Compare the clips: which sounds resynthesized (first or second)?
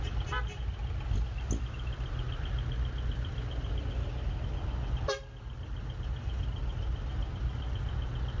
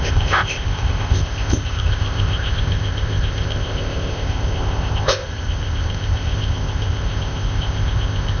second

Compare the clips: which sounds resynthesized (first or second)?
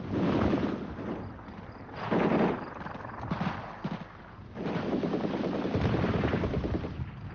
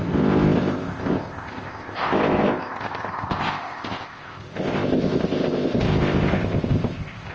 second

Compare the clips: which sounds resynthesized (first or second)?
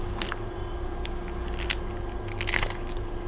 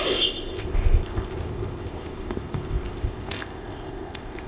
second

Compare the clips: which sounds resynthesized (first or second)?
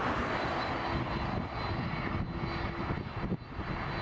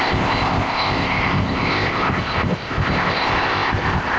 second